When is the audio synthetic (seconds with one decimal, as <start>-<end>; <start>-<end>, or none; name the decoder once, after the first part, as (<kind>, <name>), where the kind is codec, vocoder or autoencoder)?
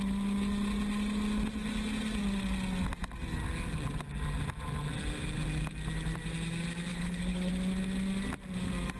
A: 6.9-7.5 (codec, HILCodec)